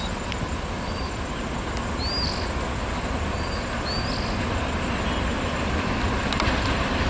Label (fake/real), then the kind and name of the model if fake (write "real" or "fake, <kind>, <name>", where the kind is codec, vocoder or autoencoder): real